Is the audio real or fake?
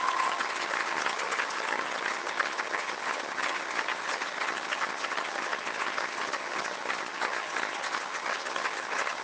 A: fake